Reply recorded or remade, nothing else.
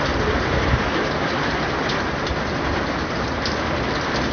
recorded